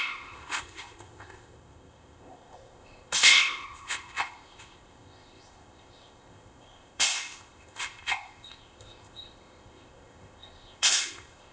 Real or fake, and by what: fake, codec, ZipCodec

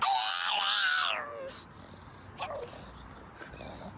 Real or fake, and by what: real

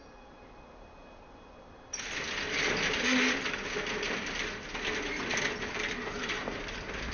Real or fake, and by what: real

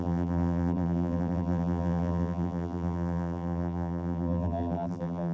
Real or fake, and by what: fake, vocoder, BigVGAN v2